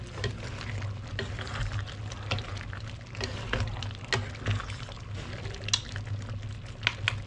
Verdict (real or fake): real